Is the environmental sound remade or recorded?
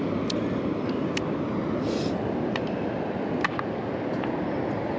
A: recorded